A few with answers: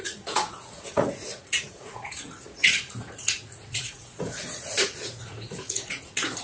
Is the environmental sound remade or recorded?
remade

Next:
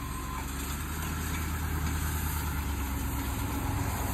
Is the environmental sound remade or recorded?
recorded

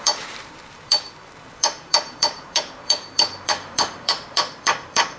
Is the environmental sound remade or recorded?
remade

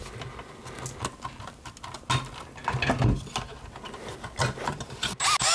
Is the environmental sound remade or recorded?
recorded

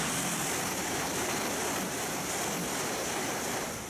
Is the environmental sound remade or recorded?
recorded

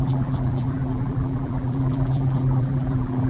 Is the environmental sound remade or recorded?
remade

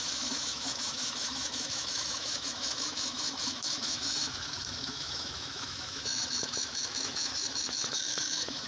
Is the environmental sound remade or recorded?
remade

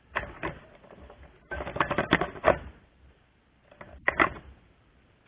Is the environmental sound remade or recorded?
remade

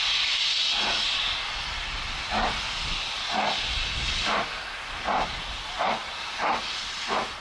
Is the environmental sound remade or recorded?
recorded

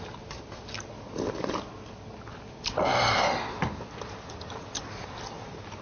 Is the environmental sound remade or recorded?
recorded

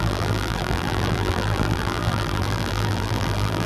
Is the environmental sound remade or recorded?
remade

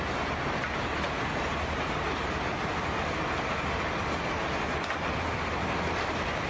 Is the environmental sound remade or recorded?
recorded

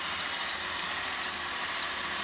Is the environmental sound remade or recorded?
remade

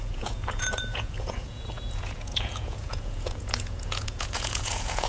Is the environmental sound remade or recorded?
remade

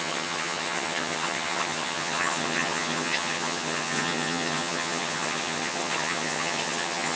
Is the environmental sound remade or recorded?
remade